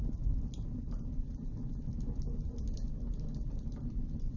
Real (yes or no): yes